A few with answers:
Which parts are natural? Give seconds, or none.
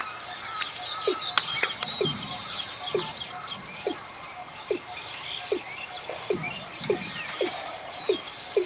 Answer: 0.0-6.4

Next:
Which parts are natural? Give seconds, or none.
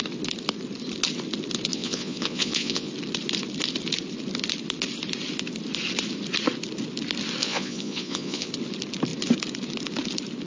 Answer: 0.0-1.7; 2.9-7.4; 8.5-10.5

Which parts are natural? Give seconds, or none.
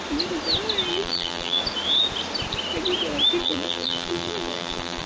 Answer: 0.0-0.9; 1.6-3.4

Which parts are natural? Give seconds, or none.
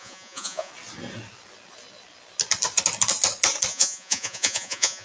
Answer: 0.7-3.7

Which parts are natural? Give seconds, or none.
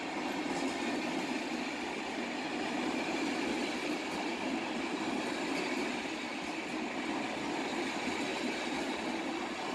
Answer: 0.0-4.3; 4.9-8.3; 9.0-9.7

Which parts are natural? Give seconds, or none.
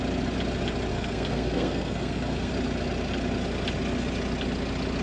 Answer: 0.0-0.9; 2.5-5.0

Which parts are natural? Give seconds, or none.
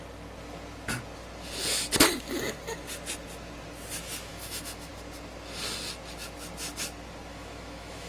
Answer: 0.0-4.3; 4.9-7.3